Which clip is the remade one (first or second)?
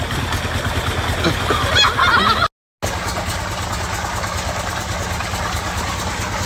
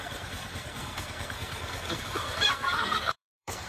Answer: second